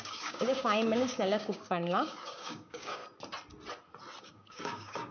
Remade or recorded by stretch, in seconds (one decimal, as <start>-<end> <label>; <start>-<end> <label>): 0.0-3.0 remade; 3.0-4.2 recorded; 4.2-5.1 remade